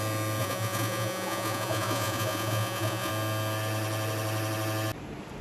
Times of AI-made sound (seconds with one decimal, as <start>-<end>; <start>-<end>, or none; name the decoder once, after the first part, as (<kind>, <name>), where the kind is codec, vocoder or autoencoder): 0.4-3.1 (vocoder, Vocos)